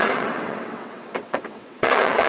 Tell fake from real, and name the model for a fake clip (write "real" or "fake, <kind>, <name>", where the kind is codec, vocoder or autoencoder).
fake, vocoder, WaveNeXt